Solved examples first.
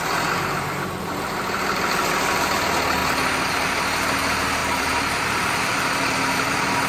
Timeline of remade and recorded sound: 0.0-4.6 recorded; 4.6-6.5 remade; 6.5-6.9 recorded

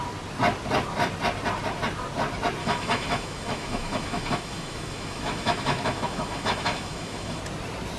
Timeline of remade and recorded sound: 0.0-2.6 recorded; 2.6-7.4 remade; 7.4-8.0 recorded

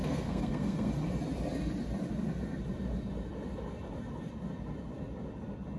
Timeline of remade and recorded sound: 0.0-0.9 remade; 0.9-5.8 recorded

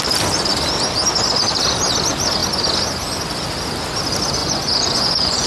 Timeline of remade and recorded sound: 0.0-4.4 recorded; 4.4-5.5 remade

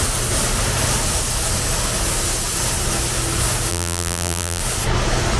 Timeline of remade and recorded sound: 0.0-3.7 recorded; 3.7-4.6 remade; 4.6-5.4 recorded

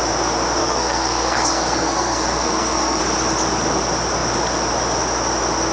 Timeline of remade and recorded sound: 0.0-0.6 recorded; 0.6-3.0 remade; 3.0-5.7 recorded